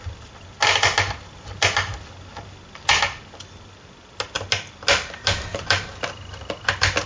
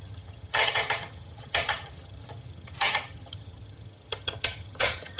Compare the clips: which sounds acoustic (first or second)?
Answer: first